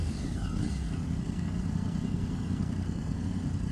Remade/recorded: remade